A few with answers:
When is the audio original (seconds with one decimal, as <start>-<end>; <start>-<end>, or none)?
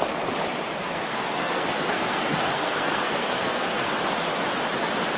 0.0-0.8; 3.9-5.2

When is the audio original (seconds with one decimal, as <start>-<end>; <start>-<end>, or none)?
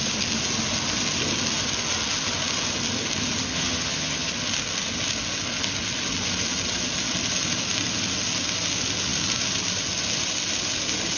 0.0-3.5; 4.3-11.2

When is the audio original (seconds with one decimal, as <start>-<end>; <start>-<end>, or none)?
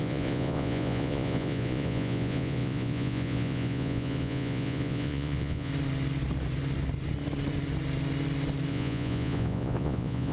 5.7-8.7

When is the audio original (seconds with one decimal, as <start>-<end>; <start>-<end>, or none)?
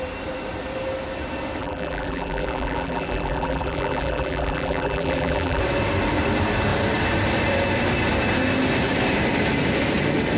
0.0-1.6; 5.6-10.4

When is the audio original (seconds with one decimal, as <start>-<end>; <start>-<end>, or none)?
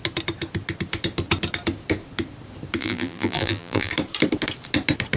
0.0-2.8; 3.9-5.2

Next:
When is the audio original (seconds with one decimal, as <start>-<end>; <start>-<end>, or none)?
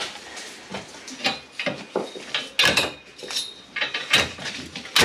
0.7-3.7